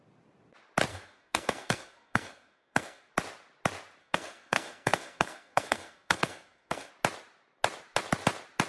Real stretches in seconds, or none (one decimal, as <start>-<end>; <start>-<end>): 0.0-0.9; 3.1-4.0; 6.9-8.7